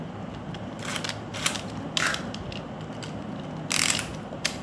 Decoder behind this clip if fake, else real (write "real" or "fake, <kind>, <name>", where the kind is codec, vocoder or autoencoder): real